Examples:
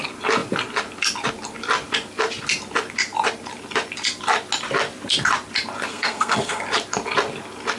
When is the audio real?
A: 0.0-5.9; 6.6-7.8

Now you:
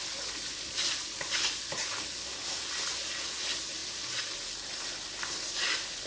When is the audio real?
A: 0.0-6.1

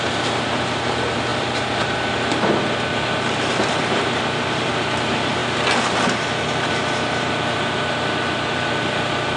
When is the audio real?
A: 5.4-6.7

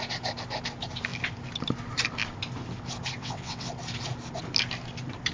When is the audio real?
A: 0.0-3.2; 3.7-5.3

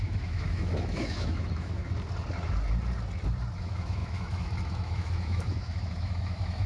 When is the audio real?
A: 1.8-3.6

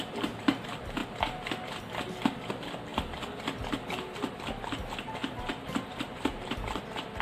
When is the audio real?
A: 0.0-5.2; 6.8-7.2

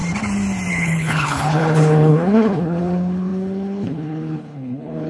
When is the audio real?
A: 0.0-0.7